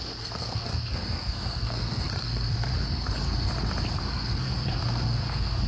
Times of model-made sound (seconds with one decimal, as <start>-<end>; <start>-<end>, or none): 0.0-2.7; 3.9-5.7

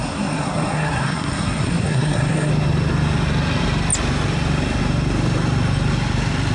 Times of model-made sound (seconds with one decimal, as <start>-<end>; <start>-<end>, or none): 0.0-2.5

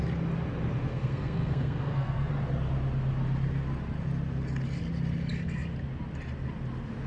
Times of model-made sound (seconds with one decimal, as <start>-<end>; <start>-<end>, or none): 0.9-2.3

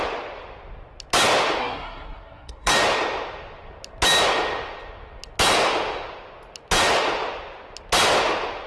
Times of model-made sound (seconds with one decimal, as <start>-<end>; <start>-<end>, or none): 1.6-2.7

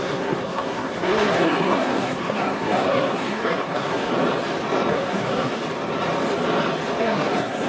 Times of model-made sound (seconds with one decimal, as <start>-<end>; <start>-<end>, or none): 0.0-4.1; 4.9-5.6; 7.0-7.7

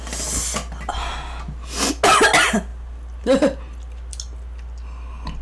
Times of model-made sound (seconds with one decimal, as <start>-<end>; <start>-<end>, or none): none

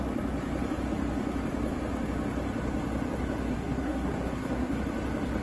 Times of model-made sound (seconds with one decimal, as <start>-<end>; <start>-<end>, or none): 3.5-4.8

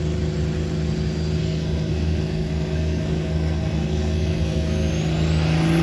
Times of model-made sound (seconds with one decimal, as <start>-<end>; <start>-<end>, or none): 1.4-4.9